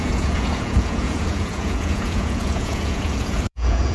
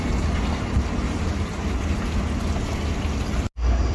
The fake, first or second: first